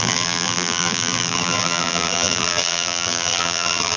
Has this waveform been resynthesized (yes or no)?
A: yes